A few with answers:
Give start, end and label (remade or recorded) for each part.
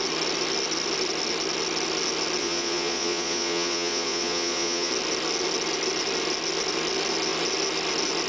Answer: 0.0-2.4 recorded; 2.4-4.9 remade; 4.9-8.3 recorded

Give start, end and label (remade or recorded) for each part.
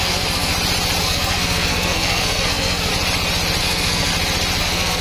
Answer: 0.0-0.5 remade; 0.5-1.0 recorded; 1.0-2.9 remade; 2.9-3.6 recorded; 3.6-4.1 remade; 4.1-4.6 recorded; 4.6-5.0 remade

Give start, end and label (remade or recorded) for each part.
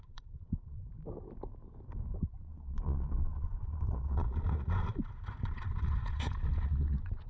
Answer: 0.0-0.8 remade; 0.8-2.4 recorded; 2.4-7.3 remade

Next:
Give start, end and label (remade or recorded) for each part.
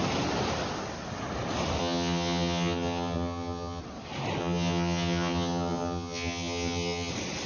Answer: 0.0-1.8 recorded; 1.8-3.8 remade; 3.8-4.4 recorded; 4.4-7.1 remade; 7.1-7.5 recorded